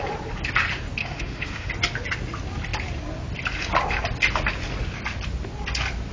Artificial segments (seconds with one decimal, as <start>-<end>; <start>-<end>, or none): 1.0-1.7